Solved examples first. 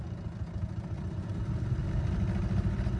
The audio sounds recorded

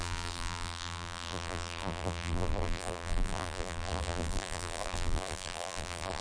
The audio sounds remade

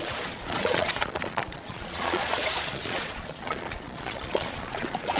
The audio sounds remade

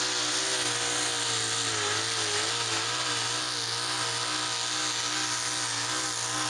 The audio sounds recorded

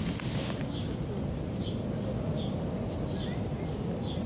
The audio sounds recorded